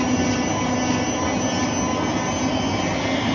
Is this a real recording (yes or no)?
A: yes